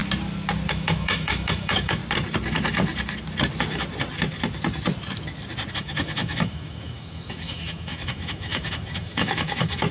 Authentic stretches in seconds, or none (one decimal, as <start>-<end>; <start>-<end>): 0.0-0.7; 2.0-5.7